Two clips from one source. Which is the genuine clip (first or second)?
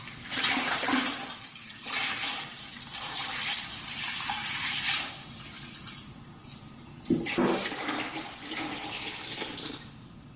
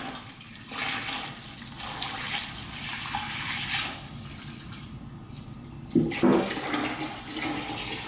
second